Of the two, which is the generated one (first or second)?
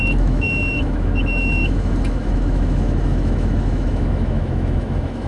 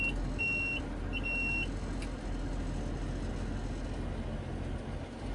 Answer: first